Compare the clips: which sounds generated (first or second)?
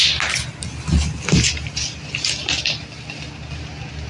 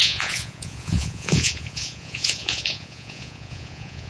second